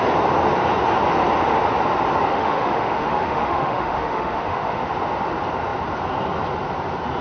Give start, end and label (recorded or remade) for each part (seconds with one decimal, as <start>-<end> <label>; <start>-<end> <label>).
0.0-2.3 recorded; 2.3-4.8 remade; 4.8-7.2 recorded